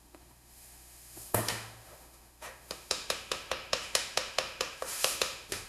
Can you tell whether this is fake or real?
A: fake